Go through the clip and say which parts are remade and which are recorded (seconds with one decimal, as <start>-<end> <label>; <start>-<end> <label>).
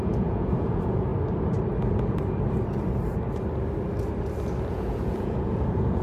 0.0-1.1 remade; 1.1-4.7 recorded; 4.7-6.0 remade